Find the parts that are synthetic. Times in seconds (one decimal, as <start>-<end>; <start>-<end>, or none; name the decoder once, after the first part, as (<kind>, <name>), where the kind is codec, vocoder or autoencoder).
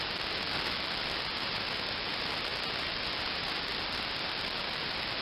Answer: none